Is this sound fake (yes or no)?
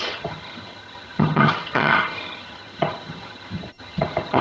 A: yes